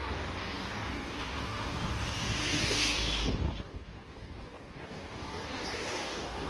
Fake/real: fake